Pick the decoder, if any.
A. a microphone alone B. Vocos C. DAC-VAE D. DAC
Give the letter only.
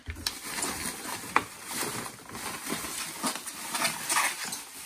A